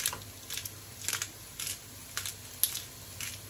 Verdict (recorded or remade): recorded